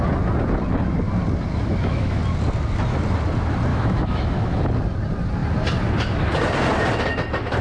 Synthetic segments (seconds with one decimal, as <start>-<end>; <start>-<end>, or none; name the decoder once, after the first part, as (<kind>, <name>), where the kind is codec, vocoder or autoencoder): 1.6-2.2 (autoencoder, DAC-VAE); 3.7-4.6